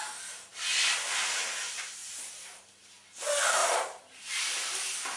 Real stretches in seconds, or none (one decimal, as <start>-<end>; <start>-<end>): 0.0-2.0; 2.6-3.6; 4.4-5.2